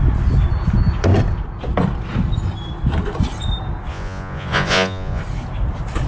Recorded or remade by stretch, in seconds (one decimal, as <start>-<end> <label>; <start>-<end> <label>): 0.0-3.9 recorded; 3.9-5.2 remade; 5.2-6.1 recorded